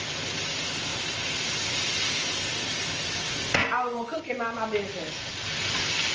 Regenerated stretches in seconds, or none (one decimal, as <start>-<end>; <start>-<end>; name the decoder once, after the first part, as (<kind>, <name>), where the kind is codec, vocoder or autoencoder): 0.9-2.4 (vocoder, BigVGAN v2)

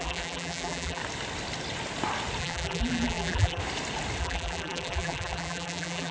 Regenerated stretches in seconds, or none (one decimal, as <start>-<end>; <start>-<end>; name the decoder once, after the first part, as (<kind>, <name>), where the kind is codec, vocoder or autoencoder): 0.0-1.0 (vocoder, BigVGAN v2); 2.4-3.6; 4.2-6.1

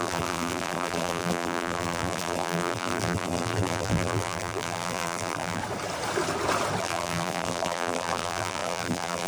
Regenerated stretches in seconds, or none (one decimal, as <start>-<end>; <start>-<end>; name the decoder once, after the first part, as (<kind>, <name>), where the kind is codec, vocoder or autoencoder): 0.0-5.6 (vocoder, BigVGAN v2); 6.8-9.3

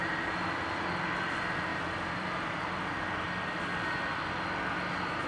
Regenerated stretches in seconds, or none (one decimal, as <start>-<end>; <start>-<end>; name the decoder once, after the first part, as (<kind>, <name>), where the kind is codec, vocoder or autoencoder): 1.7-3.6 (vocoder, BigVGAN v2)